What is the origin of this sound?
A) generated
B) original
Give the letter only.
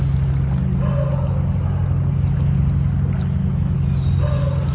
B